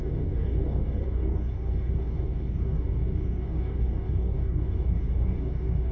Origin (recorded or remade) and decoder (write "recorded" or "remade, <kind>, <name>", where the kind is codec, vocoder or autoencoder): remade, codec, DAC